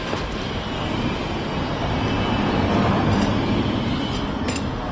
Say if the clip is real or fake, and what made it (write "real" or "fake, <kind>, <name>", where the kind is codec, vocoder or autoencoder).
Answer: real